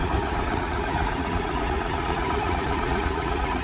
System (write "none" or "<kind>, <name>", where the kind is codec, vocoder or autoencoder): vocoder, Vocos